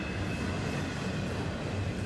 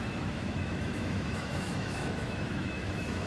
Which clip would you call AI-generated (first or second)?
second